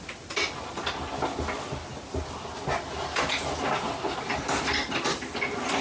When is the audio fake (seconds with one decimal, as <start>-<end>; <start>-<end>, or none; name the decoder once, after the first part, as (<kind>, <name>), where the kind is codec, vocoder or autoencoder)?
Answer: none